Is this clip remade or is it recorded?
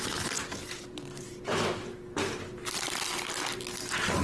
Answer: recorded